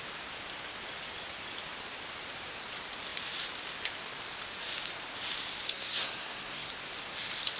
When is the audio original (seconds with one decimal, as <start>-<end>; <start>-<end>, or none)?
0.0-5.7; 6.7-7.6